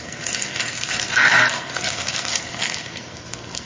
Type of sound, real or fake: fake